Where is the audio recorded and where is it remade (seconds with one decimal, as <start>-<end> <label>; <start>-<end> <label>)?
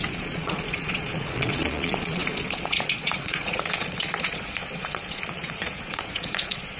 0.0-6.8 remade